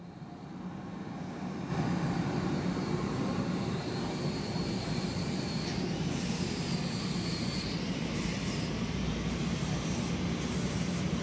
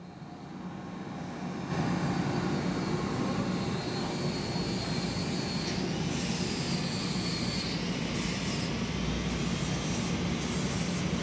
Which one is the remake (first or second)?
first